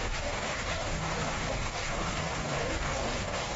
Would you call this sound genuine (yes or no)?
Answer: no